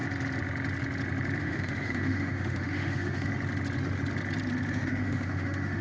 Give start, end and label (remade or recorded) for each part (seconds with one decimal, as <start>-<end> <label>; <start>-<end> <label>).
0.0-1.4 recorded; 1.4-3.3 remade; 3.3-4.7 recorded; 4.7-5.8 remade